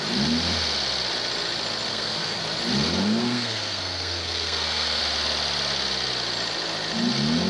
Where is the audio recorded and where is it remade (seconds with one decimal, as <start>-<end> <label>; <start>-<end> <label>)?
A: 0.0-1.9 recorded; 1.9-2.4 remade; 2.4-3.2 recorded; 3.2-5.0 remade; 5.0-7.5 recorded